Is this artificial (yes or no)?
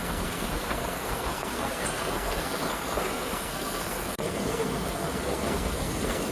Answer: yes